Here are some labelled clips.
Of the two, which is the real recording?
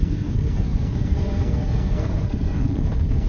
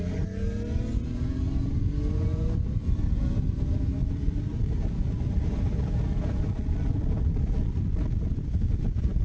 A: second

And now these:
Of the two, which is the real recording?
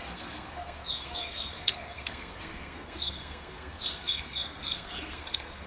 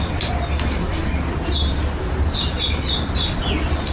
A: second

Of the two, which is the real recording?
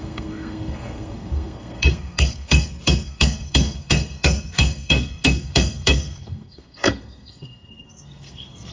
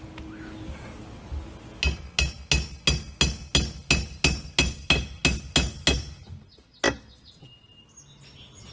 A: second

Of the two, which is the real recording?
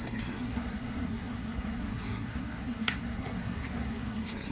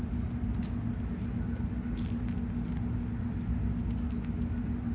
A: second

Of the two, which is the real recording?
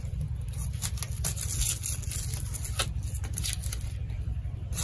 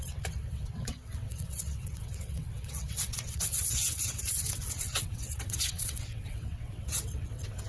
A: first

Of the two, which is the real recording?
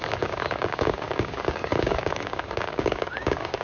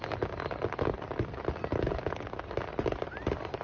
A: second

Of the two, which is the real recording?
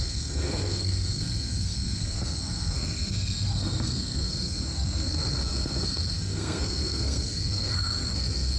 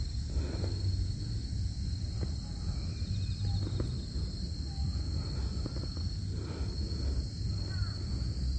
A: second